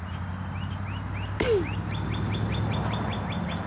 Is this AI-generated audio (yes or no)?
no